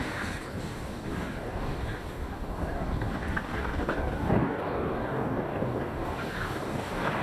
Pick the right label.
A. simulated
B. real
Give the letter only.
A